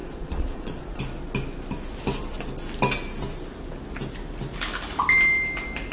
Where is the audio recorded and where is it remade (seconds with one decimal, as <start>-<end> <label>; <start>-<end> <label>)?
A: 0.0-1.0 remade; 1.0-5.9 recorded